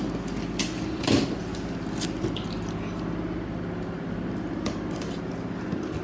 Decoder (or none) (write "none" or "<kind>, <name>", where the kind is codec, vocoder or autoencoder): none